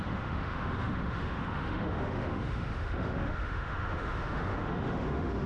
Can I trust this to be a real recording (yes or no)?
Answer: no